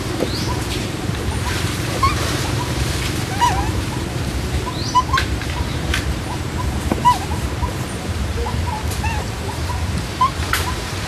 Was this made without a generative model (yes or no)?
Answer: no